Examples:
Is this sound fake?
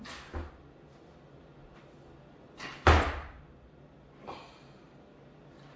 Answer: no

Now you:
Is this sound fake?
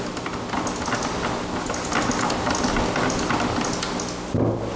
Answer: no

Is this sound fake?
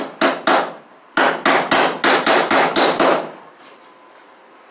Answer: no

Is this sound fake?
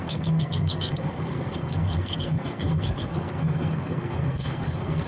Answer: yes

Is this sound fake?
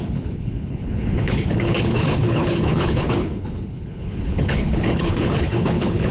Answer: yes